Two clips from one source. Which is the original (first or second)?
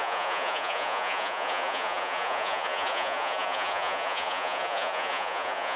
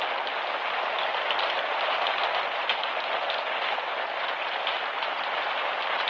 second